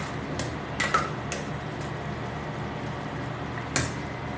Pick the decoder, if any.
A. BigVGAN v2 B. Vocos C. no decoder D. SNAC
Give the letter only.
C